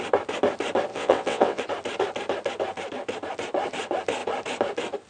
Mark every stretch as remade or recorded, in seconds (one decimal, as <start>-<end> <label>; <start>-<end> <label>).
0.0-0.9 recorded; 0.9-1.6 remade; 1.6-5.1 recorded